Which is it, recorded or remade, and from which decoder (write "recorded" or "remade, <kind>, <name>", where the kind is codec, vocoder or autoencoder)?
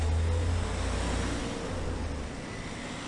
recorded